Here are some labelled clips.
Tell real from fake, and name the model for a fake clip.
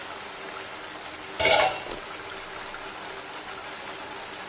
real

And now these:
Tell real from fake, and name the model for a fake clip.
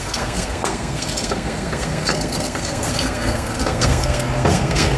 fake, codec, SNAC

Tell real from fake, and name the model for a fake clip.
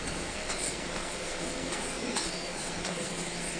fake, codec, SNAC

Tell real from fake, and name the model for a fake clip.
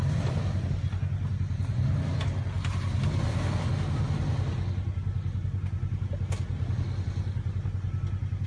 real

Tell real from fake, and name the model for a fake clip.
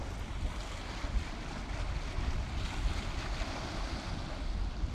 real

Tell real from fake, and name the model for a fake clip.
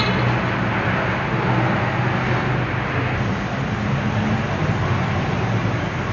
real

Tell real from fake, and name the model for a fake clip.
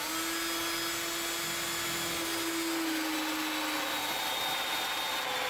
real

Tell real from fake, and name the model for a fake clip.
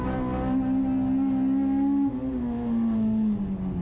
real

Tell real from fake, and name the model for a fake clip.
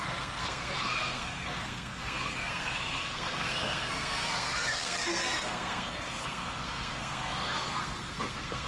fake, codec, SNAC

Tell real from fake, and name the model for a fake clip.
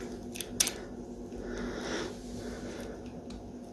real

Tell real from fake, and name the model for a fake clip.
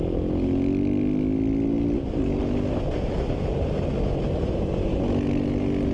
real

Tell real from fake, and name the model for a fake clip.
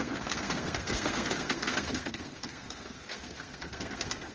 fake, codec, SNAC